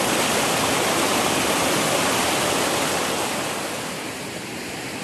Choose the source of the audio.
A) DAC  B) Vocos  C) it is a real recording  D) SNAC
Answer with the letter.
C